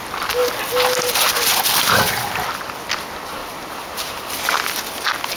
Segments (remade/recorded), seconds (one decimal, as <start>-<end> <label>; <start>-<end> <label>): 0.0-3.4 recorded; 3.4-4.2 remade; 4.2-5.4 recorded